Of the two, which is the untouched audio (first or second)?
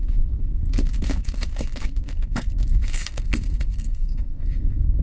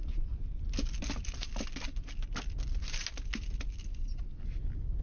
second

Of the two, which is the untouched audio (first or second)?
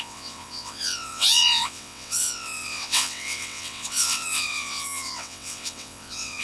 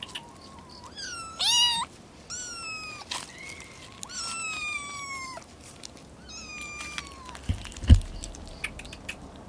second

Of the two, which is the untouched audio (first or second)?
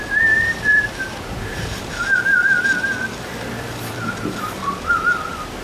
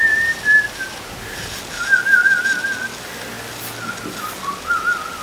second